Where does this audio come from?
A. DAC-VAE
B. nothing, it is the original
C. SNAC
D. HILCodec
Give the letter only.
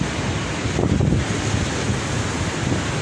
B